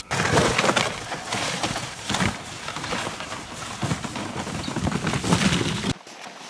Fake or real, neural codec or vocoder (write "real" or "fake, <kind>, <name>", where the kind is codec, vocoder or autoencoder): real